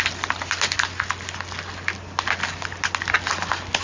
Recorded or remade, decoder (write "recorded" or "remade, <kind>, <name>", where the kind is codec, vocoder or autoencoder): recorded